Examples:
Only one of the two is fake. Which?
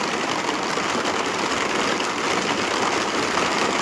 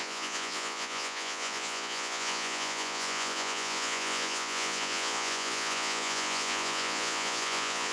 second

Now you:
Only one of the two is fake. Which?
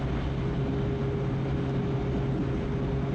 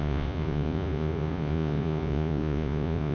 second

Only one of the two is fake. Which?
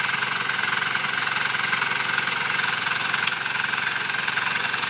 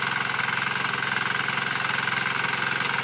first